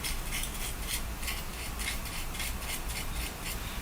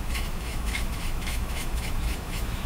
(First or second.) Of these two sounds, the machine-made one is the second